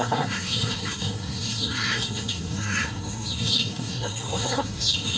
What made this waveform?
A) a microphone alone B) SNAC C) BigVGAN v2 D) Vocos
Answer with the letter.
B